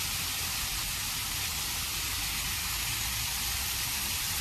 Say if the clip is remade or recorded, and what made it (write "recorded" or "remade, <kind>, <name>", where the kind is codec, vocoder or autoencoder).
recorded